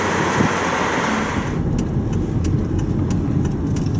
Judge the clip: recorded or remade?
recorded